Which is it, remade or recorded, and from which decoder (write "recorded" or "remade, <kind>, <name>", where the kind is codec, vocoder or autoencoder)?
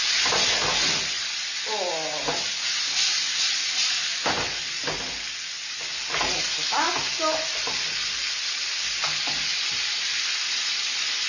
recorded